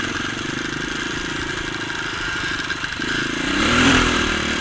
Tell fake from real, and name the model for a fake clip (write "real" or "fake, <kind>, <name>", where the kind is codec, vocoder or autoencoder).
fake, vocoder, BigVGAN v2